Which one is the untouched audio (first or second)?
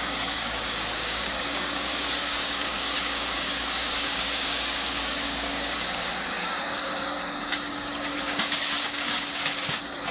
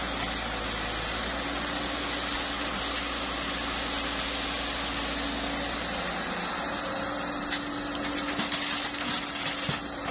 second